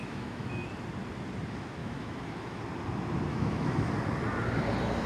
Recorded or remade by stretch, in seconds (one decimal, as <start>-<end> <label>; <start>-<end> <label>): 0.0-0.6 remade; 0.6-1.8 recorded; 1.8-2.6 remade; 2.6-3.3 recorded; 3.3-3.9 remade; 3.9-5.1 recorded